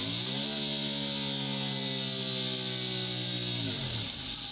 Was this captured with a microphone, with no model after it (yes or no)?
yes